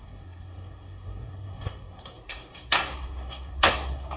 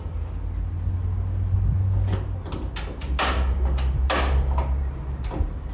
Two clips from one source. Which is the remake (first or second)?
first